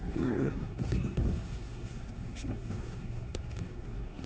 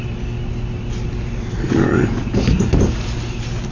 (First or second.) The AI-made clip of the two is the first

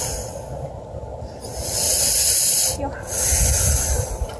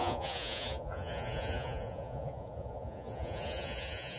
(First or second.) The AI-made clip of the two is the second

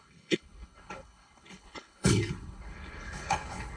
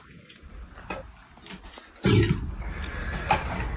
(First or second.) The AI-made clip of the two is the first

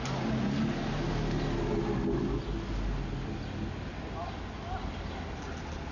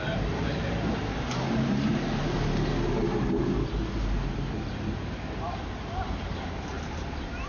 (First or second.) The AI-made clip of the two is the second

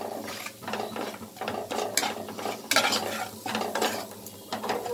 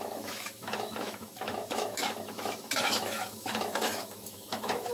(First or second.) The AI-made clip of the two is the second